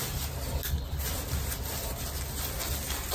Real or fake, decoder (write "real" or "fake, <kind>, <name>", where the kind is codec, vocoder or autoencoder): real